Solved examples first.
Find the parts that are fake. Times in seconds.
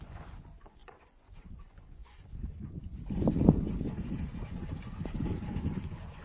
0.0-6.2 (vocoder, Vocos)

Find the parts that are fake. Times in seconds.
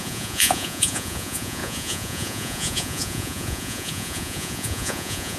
0.0-5.4 (vocoder, Vocos)